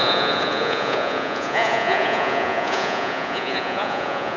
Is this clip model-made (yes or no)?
yes